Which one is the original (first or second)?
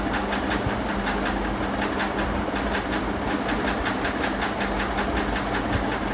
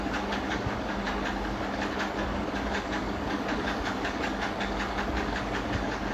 first